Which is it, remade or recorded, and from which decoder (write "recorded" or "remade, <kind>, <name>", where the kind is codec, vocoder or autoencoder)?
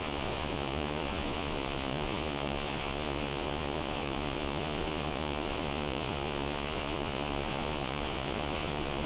remade, vocoder, Vocos